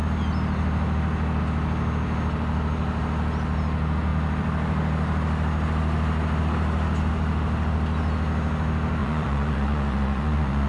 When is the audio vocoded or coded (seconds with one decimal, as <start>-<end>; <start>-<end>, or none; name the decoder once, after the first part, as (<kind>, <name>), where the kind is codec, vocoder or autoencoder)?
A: 9.0-10.7 (vocoder, Vocos)